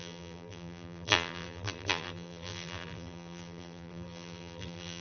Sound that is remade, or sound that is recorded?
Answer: remade